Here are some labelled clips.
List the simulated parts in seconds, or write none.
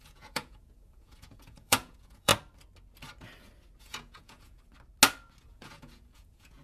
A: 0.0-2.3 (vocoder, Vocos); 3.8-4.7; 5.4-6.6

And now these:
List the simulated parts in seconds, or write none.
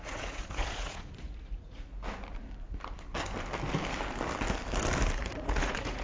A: 0.0-1.9 (vocoder, Vocos); 5.2-6.0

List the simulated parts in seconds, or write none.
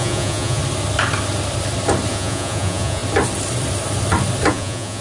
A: 0.0-0.6 (vocoder, Vocos); 2.1-3.0; 4.5-5.0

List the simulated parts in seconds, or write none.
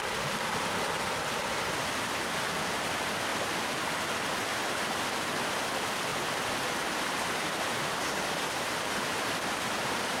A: none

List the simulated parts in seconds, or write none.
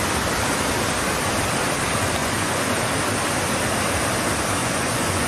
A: 2.2-2.7 (vocoder, Vocos); 4.6-5.3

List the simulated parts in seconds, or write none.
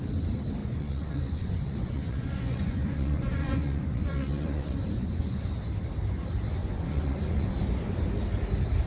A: 0.6-5.4 (vocoder, Vocos); 6.6-7.5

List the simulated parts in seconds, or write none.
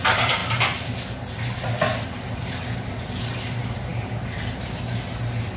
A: none